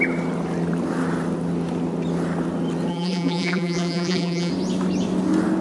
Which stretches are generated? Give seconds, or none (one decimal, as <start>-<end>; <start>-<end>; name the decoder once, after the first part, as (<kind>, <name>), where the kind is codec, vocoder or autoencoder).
2.9-4.5 (vocoder, BigVGAN v2)